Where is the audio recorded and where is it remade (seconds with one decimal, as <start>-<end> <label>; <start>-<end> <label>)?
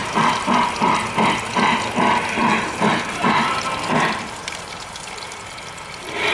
0.0-0.8 remade; 0.8-2.4 recorded; 2.4-6.3 remade